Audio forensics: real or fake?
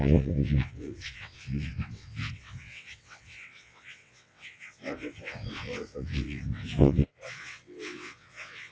fake